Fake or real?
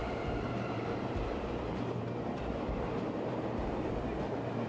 fake